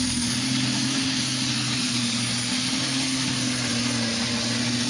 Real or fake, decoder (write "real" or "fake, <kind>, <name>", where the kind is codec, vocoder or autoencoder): real